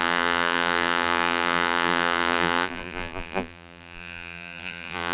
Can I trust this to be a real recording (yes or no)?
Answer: no